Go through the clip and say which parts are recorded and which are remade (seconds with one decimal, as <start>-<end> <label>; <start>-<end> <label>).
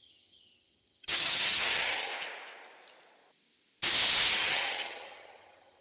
0.0-2.1 remade; 2.1-4.3 recorded; 4.3-5.8 remade